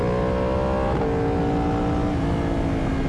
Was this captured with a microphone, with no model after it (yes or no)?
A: yes